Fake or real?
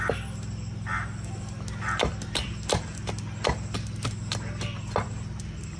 real